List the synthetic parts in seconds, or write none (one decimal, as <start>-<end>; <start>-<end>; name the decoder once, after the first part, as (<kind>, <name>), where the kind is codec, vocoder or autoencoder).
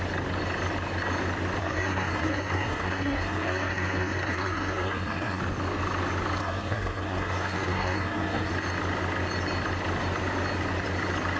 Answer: 1.6-5.4 (codec, SNAC); 6.4-8.5